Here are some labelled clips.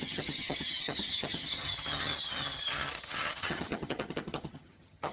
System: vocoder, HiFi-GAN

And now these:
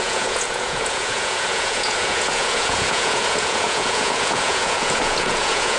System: vocoder, Vocos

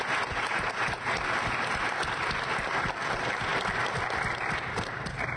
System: none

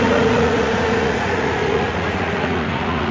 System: vocoder, Vocos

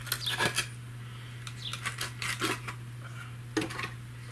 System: none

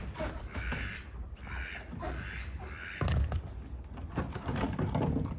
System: none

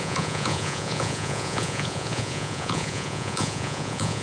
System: vocoder, Vocos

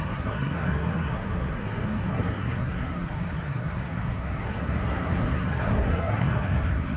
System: codec, SNAC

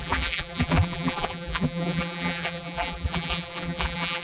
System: vocoder, BigVGAN v2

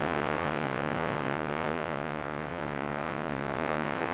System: vocoder, WaveNeXt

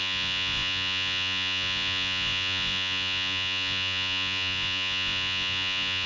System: vocoder, Vocos